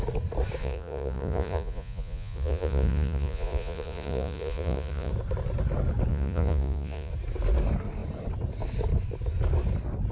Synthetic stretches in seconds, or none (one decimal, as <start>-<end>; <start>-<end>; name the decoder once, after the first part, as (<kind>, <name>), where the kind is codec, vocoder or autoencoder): 0.6-5.1 (vocoder, Vocos); 6.1-7.1